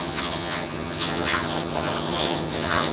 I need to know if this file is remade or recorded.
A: remade